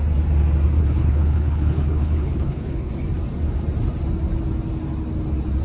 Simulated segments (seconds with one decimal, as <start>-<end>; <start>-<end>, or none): 0.8-2.9